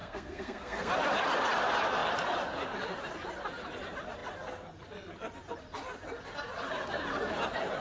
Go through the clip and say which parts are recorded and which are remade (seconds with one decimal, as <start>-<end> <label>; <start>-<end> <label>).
0.0-0.9 remade; 0.9-7.8 recorded